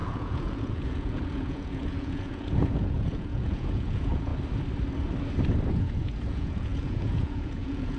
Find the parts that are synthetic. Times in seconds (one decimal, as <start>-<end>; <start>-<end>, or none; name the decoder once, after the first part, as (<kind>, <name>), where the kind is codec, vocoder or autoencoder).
0.0-4.3 (vocoder, Vocos); 5.7-8.0